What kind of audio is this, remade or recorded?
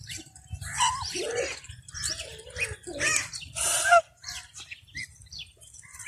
remade